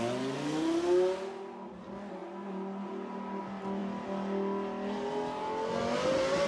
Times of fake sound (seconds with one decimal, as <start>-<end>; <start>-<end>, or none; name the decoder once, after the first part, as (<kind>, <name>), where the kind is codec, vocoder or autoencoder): none